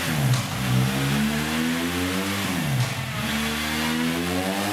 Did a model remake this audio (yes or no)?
no